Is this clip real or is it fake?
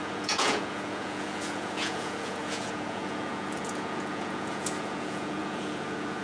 fake